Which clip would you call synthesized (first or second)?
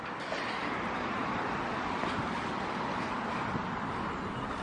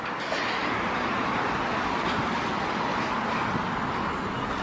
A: first